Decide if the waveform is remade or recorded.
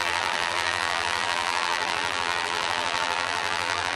remade